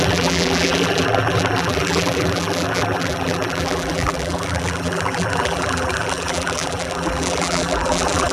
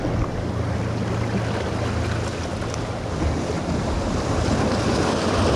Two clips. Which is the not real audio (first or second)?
first